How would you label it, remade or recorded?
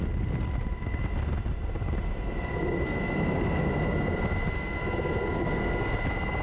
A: recorded